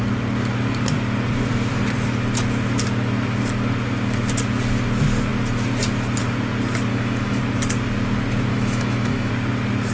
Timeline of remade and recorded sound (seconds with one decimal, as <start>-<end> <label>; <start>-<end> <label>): 0.0-6.9 recorded; 6.9-7.4 remade; 7.4-8.5 recorded; 8.5-9.3 remade; 9.3-9.9 recorded

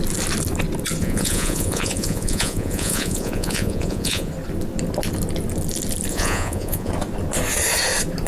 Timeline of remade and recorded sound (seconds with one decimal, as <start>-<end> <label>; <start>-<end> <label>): 0.0-1.0 recorded; 1.0-4.3 remade; 4.3-6.1 recorded; 6.1-6.9 remade; 6.9-8.3 recorded

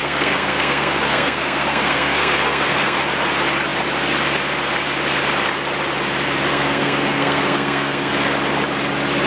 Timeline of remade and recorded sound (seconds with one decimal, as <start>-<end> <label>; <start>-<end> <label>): 0.0-3.0 remade; 3.0-6.5 recorded; 6.5-8.1 remade; 8.1-9.3 recorded

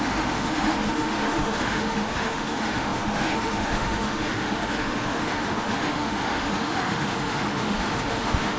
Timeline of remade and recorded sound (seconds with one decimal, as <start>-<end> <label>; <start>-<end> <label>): 0.0-8.6 remade

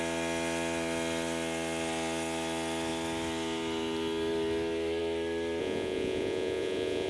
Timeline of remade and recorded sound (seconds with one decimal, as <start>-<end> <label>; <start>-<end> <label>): 0.0-5.6 recorded; 5.6-7.1 remade